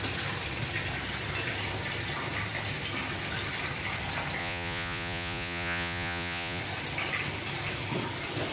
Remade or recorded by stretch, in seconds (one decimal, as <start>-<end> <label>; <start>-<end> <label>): 0.0-4.4 recorded; 4.4-6.6 remade; 6.6-8.5 recorded